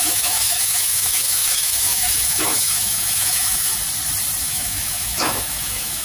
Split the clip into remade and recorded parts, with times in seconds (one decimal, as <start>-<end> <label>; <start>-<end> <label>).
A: 0.0-3.7 remade; 3.7-4.4 recorded; 4.4-6.0 remade